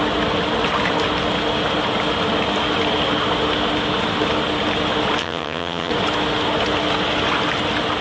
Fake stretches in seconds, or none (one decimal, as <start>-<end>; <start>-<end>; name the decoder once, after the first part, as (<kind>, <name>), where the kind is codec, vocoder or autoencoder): 5.2-5.9 (vocoder, HiFi-GAN)